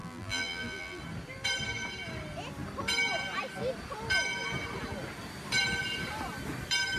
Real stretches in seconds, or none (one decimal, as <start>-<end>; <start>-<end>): 1.0-7.0